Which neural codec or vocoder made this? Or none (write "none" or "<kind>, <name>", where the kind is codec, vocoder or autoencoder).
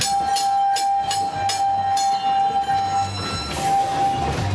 none